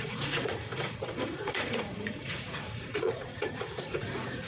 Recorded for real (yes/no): no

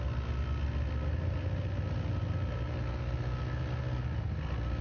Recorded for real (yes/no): yes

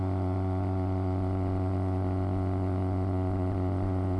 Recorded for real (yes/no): no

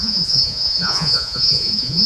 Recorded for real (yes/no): no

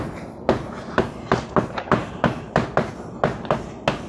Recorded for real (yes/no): yes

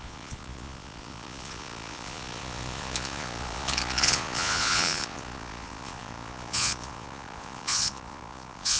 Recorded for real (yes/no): no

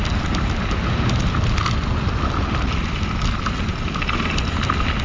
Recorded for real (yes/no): yes